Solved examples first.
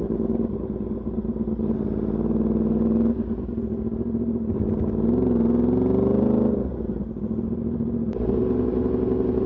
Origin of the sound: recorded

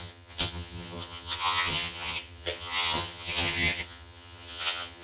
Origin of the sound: remade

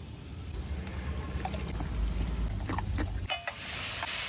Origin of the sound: recorded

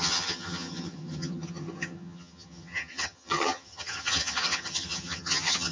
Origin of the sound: remade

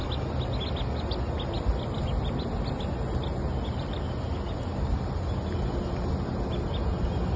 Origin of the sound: recorded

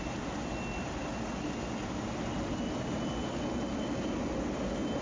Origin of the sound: recorded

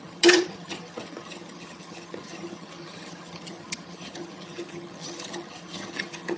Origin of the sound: remade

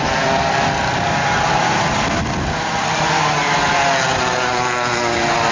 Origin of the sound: recorded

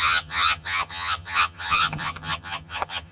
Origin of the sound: remade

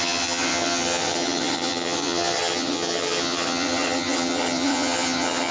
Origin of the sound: remade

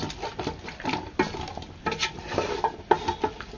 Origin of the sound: recorded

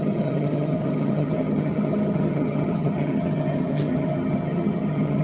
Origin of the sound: remade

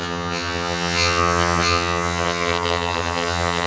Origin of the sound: remade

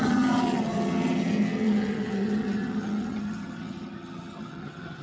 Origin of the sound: remade